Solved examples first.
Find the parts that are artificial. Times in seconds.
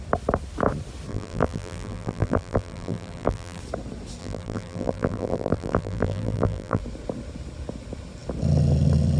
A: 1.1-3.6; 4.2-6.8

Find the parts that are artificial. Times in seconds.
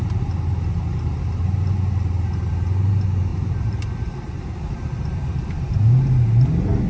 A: 3.3-4.4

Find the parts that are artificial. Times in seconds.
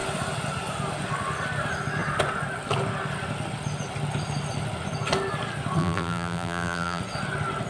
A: 5.8-7.0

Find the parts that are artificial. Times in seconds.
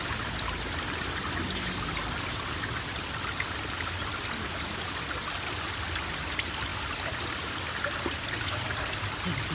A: 6.7-7.8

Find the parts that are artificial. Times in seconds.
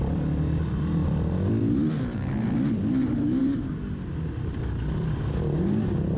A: 1.0-1.9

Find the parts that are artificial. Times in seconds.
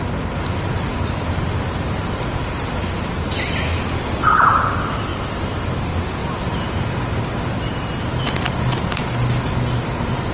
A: 5.1-5.7; 6.2-6.8